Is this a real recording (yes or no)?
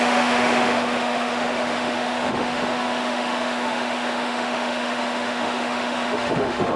no